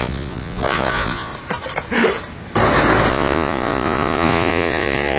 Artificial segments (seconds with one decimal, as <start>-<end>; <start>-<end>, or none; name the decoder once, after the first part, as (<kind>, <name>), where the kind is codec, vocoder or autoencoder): 0.0-1.3 (vocoder, Vocos); 3.1-5.2